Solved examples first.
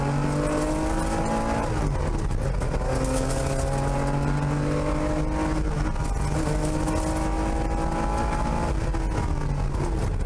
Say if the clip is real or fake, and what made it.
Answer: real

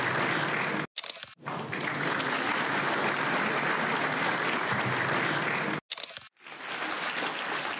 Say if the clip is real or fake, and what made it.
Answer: real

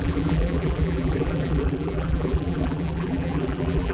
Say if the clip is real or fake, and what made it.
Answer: fake, vocoder, BigVGAN v2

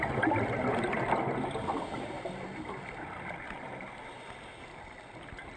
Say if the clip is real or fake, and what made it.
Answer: real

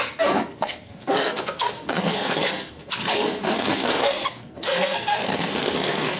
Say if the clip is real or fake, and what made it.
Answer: fake, codec, SNAC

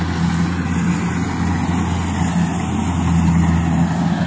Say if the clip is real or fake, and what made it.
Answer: real